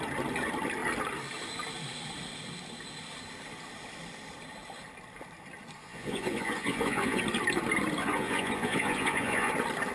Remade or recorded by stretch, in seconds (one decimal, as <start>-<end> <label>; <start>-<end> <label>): 0.0-5.8 recorded; 5.8-7.2 remade; 7.2-8.0 recorded; 8.0-9.5 remade; 9.5-9.9 recorded